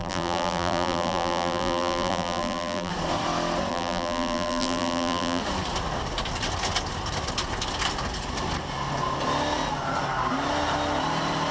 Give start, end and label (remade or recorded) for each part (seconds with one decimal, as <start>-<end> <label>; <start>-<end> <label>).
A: 0.0-2.9 remade; 2.9-3.7 recorded; 3.7-5.4 remade; 5.4-11.5 recorded